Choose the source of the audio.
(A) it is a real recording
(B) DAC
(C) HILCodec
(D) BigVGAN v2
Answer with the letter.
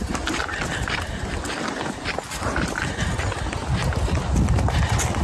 A